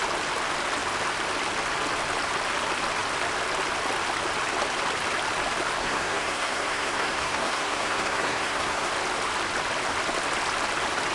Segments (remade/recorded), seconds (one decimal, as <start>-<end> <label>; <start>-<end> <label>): 0.0-5.8 recorded; 5.8-8.9 remade; 8.9-11.1 recorded